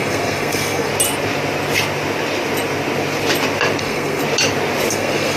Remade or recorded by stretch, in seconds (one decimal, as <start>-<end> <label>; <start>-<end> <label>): 0.0-0.9 remade; 0.9-3.8 recorded; 3.8-4.2 remade; 4.2-4.9 recorded; 4.9-5.4 remade

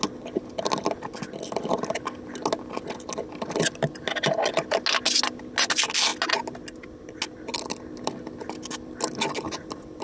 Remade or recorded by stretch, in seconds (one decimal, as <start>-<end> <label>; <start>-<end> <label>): 0.0-10.0 recorded